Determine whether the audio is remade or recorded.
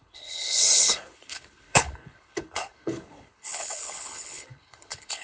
remade